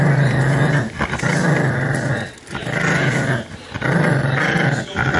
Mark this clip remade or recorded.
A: recorded